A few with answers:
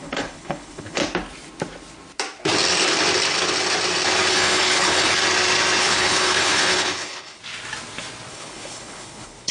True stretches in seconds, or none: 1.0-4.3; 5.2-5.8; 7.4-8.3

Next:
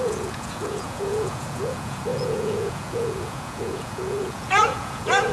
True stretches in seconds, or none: none